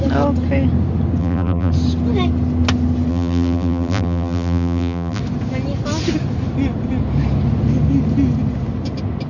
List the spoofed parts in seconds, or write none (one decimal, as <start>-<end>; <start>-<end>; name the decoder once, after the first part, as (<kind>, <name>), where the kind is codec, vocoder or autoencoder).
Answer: 1.2-1.7 (vocoder, BigVGAN v2); 3.1-5.2